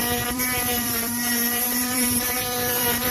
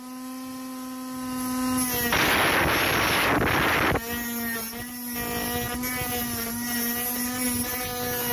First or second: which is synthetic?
first